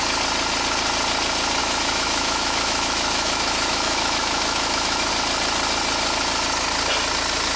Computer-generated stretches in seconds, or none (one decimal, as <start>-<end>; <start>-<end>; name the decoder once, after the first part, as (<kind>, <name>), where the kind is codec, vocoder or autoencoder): 1.6-5.1 (autoencoder, DAC-VAE)

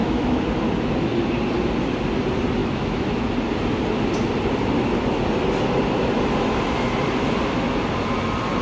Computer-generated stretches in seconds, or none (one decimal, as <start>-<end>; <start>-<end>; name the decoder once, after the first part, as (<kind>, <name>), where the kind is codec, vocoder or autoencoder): 0.0-0.5 (autoencoder, DAC-VAE); 2.6-3.3

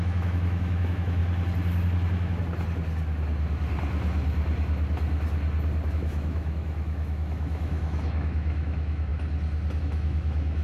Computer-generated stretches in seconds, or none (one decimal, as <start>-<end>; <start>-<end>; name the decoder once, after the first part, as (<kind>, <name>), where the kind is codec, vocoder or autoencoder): 0.0-1.2 (autoencoder, DAC-VAE); 5.9-9.1; 9.8-10.6